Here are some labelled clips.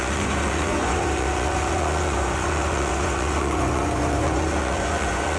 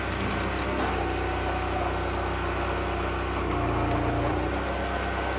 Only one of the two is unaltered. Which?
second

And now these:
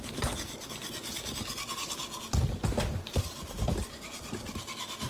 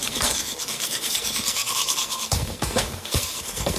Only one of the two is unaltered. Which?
first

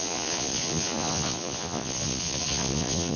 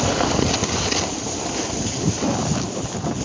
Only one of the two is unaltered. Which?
second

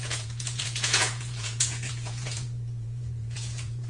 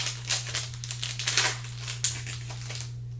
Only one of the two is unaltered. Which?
second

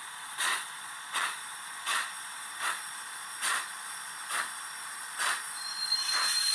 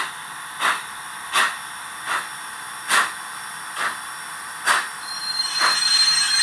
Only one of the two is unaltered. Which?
second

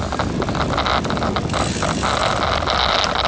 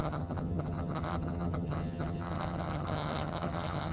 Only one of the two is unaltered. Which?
first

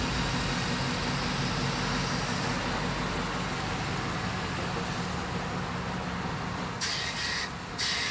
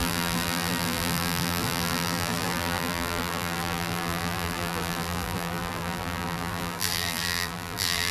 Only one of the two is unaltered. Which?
first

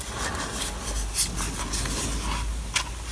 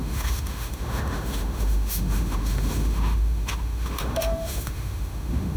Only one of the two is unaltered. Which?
first